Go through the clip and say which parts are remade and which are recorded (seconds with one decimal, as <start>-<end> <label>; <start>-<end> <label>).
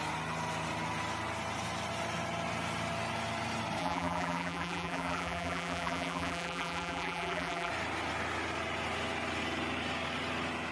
0.0-3.8 recorded; 3.8-7.7 remade; 7.7-10.7 recorded